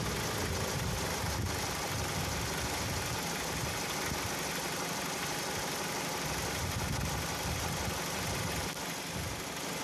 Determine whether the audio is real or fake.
real